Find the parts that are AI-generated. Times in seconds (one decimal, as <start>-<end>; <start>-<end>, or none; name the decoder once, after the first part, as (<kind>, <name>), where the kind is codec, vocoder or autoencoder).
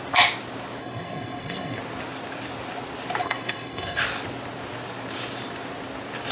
0.8-1.8 (codec, SNAC); 3.2-4.0